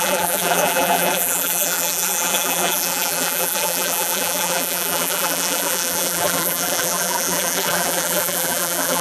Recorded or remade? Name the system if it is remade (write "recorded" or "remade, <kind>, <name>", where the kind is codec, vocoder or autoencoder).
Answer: remade, vocoder, BigVGAN v2